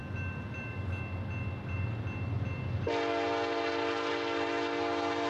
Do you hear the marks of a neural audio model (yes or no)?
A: no